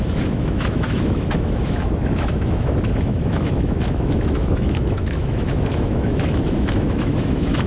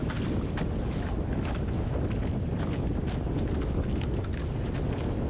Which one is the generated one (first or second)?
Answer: first